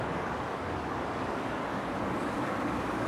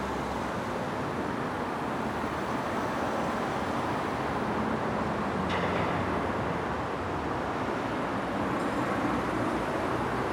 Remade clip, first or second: first